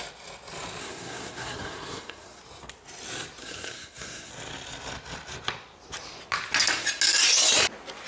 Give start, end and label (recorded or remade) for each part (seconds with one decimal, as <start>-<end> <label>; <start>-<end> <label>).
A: 0.0-0.8 recorded; 0.8-2.4 remade; 2.4-3.4 recorded; 3.4-4.3 remade; 4.3-8.1 recorded